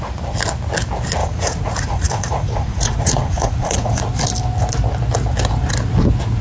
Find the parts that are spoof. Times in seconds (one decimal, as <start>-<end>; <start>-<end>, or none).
1.2-4.0